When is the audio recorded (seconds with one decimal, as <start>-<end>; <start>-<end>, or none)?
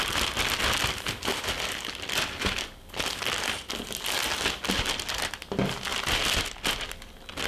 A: 0.0-7.5